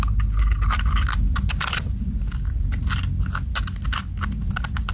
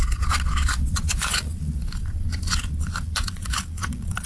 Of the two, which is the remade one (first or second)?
second